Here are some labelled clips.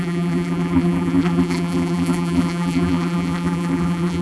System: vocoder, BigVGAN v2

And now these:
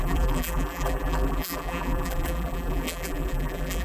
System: vocoder, BigVGAN v2